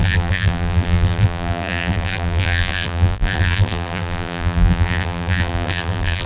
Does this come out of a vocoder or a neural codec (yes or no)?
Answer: yes